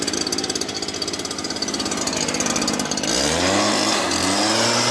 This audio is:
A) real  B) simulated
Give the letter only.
A